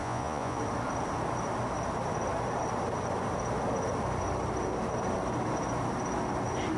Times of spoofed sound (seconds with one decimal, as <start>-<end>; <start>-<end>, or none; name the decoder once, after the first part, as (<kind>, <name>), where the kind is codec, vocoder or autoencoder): 0.0-0.6 (vocoder, Vocos)